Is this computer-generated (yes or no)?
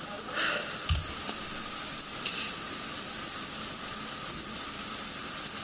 no